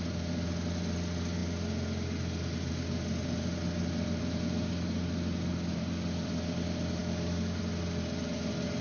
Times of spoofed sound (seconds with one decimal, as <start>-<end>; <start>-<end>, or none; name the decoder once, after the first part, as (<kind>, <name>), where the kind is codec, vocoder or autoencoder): 7.0-7.6 (codec, DAC)

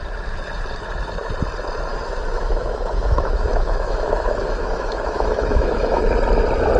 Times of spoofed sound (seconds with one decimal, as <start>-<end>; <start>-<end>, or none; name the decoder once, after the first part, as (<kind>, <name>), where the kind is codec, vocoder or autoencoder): 1.9-6.0 (autoencoder, DAC-VAE)

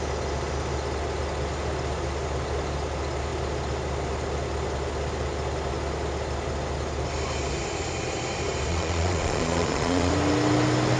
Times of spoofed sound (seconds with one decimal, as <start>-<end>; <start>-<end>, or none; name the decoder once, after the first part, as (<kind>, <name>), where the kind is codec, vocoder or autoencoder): 8.7-10.1 (vocoder, Vocos)

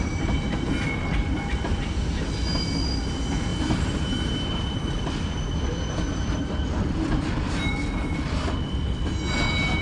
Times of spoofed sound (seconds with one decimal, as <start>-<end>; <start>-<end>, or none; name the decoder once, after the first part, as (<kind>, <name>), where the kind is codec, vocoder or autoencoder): 3.5-7.7 (vocoder, BigVGAN v2)